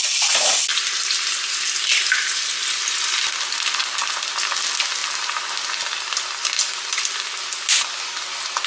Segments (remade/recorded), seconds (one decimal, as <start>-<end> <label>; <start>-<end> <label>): 0.0-8.7 recorded